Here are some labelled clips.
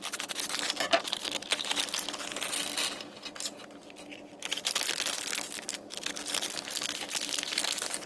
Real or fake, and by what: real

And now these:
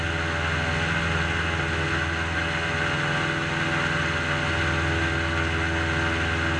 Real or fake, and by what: real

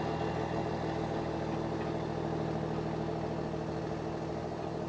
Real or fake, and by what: real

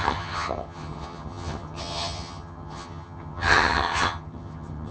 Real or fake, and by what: fake, vocoder, HiFi-GAN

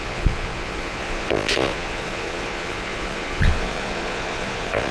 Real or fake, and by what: fake, vocoder, Vocos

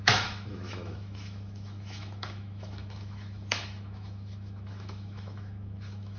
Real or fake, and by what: fake, autoencoder, DAC-VAE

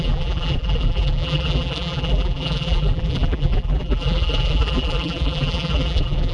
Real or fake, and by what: fake, vocoder, BigVGAN v2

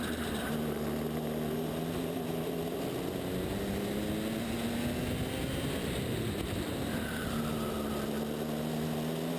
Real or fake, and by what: real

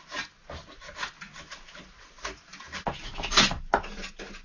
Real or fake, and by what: real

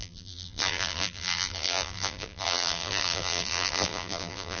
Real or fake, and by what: fake, vocoder, BigVGAN v2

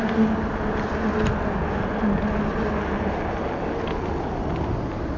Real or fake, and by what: real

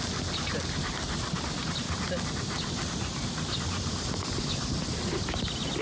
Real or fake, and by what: real